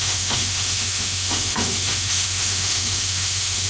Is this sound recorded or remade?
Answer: remade